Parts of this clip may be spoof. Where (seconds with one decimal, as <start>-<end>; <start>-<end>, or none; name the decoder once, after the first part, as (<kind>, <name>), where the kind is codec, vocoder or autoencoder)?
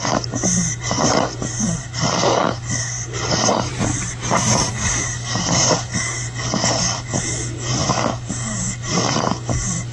0.0-3.7 (codec, DAC); 4.7-9.9